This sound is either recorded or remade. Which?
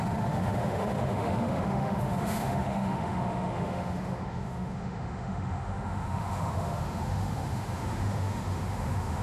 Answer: remade